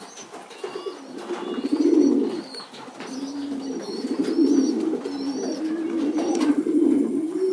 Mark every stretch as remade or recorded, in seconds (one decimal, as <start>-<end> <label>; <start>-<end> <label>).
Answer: 0.0-4.9 recorded; 4.9-5.6 remade; 5.6-7.5 recorded